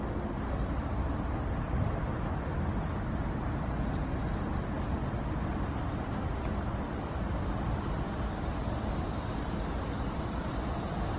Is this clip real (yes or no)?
yes